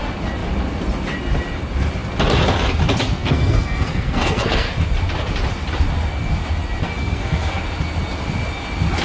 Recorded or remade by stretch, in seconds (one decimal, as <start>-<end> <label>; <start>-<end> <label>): 0.0-3.1 recorded; 3.1-4.8 remade; 4.8-6.8 recorded; 6.8-7.6 remade; 7.6-9.0 recorded